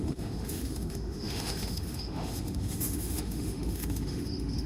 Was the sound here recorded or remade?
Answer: remade